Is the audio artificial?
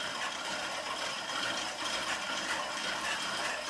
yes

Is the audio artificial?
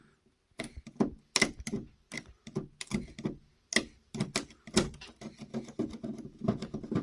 no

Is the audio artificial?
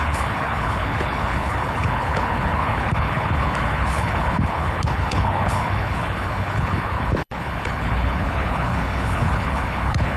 yes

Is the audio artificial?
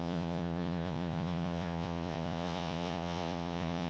yes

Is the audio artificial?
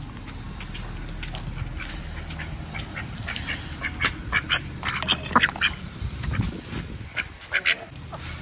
no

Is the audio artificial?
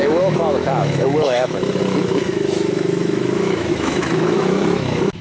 yes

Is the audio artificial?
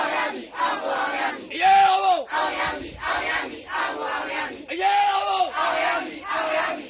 no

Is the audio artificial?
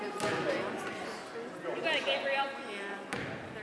no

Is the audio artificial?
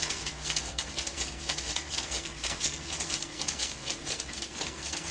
yes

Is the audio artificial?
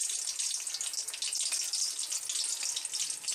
no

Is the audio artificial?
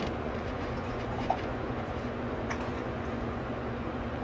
yes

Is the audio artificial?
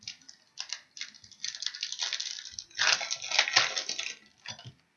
no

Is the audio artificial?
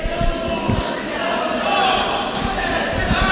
no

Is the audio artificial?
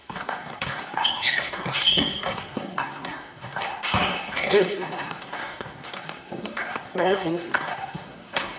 yes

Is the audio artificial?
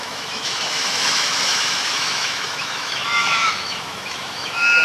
yes